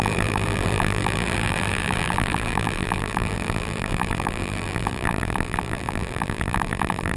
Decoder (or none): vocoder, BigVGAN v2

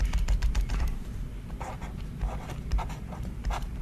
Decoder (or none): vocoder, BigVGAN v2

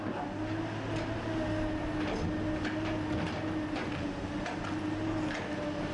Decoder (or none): none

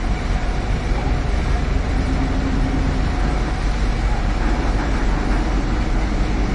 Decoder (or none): vocoder, BigVGAN v2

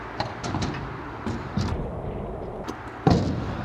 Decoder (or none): vocoder, BigVGAN v2